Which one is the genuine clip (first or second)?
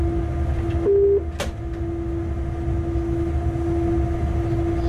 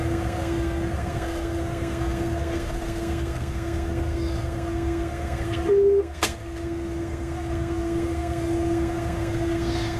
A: first